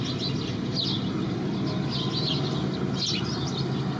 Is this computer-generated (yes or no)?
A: no